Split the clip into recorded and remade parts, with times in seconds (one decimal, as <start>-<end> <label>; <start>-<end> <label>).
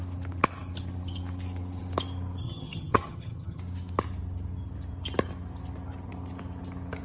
0.0-2.4 recorded; 2.4-3.6 remade; 3.6-7.0 recorded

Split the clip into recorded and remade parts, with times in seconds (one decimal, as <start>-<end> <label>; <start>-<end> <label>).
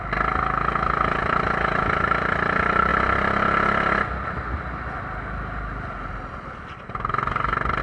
0.0-7.8 recorded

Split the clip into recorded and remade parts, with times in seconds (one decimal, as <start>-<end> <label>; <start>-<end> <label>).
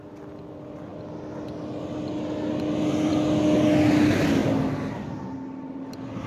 0.0-6.3 recorded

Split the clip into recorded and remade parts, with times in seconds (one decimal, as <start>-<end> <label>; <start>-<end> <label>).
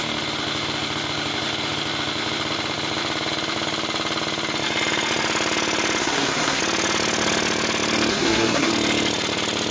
0.0-6.0 recorded; 6.0-6.6 remade; 6.6-8.1 recorded; 8.1-8.7 remade; 8.7-9.7 recorded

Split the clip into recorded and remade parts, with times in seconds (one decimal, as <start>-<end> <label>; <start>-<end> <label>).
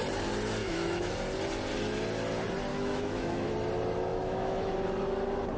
0.0-0.6 recorded; 0.6-1.1 remade; 1.1-2.7 recorded; 2.7-3.5 remade; 3.5-4.1 recorded; 4.1-4.7 remade; 4.7-5.6 recorded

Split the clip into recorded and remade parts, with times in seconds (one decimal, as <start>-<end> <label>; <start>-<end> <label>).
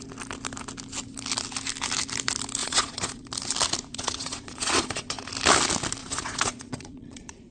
0.0-2.6 recorded; 2.6-3.3 remade; 3.3-3.9 recorded; 3.9-5.3 remade; 5.3-6.0 recorded; 6.0-7.5 remade